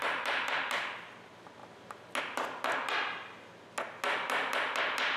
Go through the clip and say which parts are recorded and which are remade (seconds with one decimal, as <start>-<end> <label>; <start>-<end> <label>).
0.0-0.6 remade; 0.6-5.2 recorded